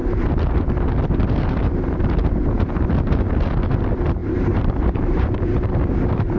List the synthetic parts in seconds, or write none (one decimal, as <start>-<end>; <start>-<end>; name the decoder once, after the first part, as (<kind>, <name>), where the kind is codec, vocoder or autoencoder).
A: 4.2-6.4 (vocoder, BigVGAN v2)